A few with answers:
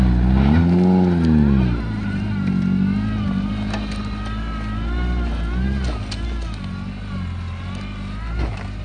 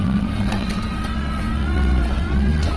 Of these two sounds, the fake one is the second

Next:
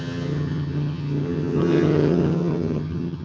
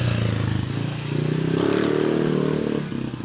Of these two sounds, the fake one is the first